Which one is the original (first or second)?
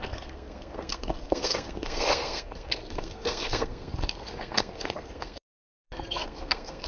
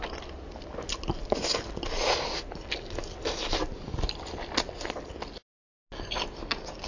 second